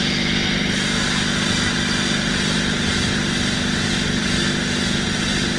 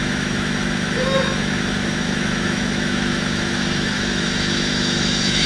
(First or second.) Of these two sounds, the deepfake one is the second